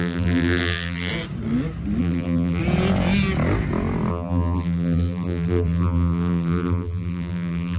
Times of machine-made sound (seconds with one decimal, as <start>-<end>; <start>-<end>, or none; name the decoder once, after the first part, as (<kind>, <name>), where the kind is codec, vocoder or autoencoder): 0.0-1.1 (vocoder, BigVGAN v2); 2.0-2.6; 4.1-7.8